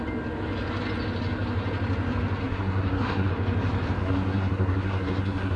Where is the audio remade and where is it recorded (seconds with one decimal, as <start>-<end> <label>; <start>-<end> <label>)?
0.0-2.4 recorded; 2.4-3.3 remade; 3.3-4.0 recorded; 4.0-5.6 remade